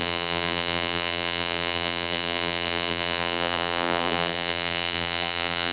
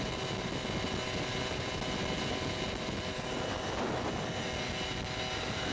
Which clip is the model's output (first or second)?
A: first